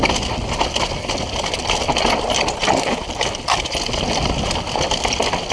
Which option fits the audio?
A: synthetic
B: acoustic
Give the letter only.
B